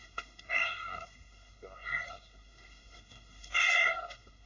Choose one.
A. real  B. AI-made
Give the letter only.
B